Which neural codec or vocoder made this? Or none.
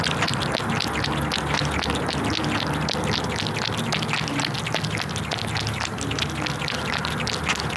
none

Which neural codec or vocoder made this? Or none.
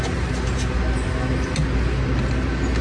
none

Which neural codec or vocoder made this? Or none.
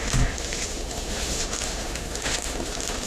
autoencoder, DAC-VAE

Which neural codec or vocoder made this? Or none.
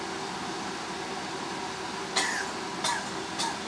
none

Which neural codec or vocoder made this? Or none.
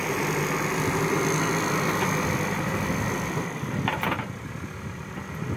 none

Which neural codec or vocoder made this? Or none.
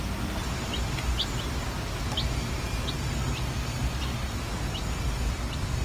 none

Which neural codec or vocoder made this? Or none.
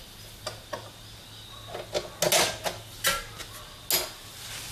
none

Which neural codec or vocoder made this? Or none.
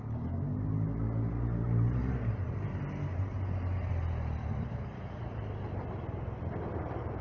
none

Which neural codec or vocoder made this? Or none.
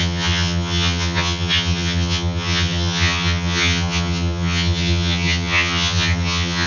vocoder, HiFi-GAN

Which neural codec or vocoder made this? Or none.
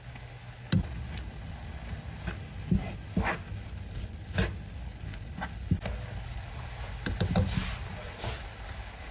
none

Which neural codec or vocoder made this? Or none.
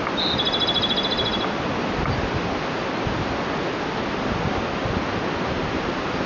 none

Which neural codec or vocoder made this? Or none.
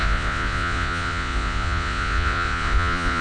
vocoder, Vocos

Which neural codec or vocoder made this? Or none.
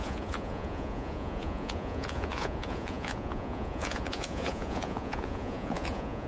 vocoder, Vocos